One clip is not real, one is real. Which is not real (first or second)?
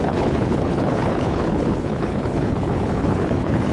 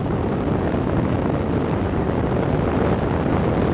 first